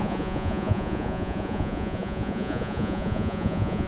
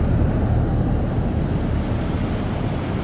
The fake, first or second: first